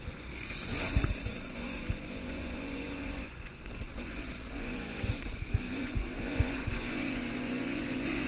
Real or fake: fake